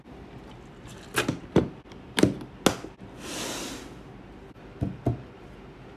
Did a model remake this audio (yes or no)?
no